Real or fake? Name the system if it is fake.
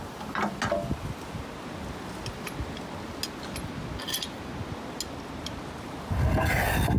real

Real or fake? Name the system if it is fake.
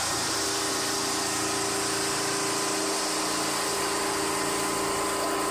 real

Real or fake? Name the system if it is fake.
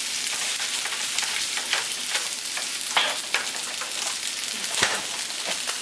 real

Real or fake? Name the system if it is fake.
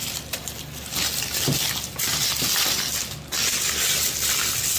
real